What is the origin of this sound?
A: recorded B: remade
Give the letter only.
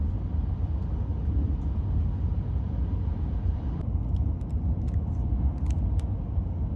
A